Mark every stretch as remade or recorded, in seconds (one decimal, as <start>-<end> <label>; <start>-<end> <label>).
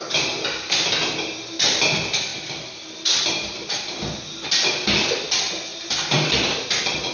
0.0-7.1 recorded